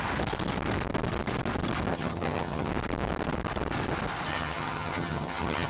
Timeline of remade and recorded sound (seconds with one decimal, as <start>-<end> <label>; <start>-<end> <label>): 0.0-1.9 recorded; 1.9-2.7 remade; 2.7-4.3 recorded; 4.3-5.7 remade